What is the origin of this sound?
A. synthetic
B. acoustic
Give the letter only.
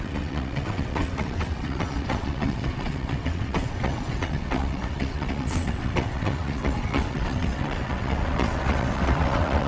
A